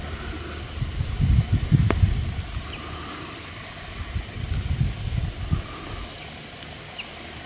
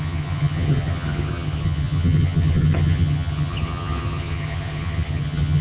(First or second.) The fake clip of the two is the second